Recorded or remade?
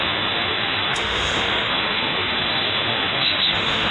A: remade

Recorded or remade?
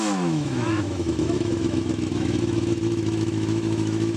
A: remade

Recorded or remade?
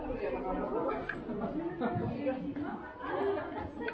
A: recorded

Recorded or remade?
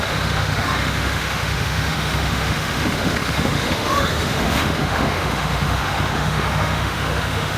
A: remade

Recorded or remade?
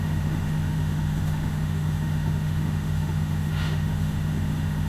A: remade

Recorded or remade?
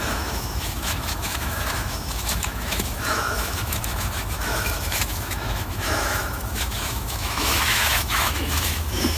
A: remade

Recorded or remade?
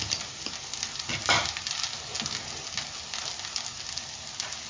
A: recorded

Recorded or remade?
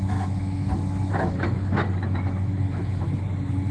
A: remade